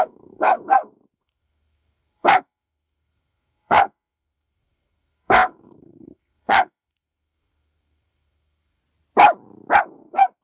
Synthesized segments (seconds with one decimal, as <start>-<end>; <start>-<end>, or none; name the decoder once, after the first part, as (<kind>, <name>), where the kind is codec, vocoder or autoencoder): 0.0-8.8 (codec, SNAC); 9.8-10.4